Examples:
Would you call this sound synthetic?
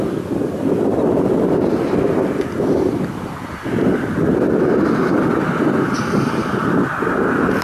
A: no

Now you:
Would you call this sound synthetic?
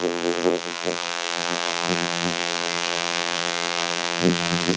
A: yes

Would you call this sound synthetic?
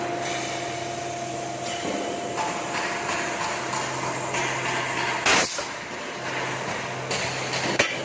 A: no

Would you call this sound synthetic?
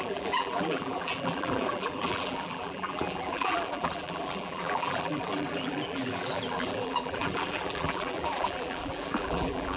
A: yes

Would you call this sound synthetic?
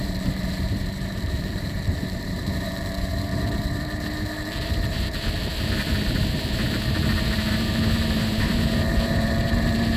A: yes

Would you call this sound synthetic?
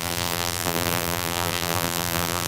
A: yes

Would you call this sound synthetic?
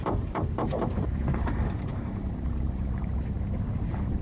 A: yes